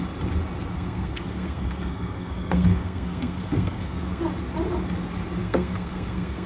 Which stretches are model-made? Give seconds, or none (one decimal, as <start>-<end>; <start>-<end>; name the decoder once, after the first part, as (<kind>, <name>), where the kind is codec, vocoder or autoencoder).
0.7-4.2 (codec, SNAC); 5.4-6.5